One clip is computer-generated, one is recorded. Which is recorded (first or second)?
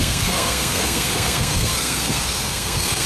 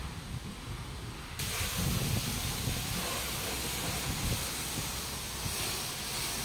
second